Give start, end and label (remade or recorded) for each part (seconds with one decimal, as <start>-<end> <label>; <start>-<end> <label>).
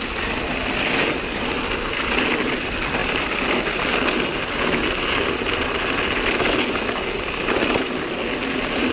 0.0-8.9 recorded